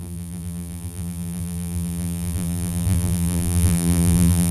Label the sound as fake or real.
fake